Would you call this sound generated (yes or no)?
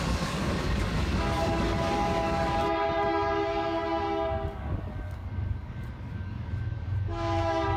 yes